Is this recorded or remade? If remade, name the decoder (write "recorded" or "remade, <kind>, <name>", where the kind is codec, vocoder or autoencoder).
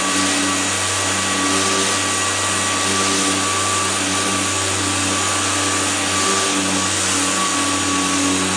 recorded